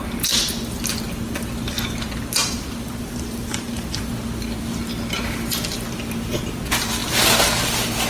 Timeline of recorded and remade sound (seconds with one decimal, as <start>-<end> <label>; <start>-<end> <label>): 0.0-2.4 recorded; 2.4-4.1 remade; 4.1-8.1 recorded